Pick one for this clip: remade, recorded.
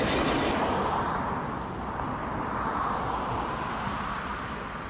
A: recorded